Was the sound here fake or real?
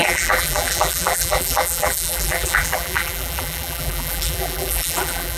fake